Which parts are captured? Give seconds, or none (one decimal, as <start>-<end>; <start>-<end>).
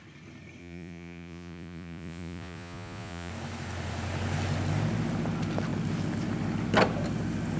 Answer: 0.0-0.6; 3.3-7.6